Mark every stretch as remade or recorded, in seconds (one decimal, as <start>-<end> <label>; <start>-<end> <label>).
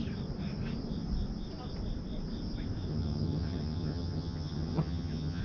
0.0-2.9 recorded; 2.9-5.4 remade